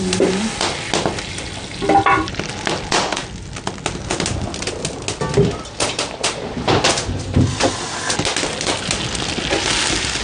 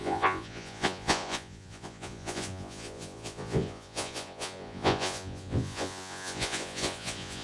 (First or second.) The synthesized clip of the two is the second